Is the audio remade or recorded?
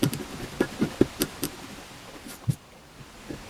remade